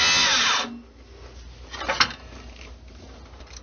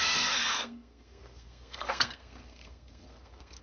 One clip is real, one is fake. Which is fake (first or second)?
second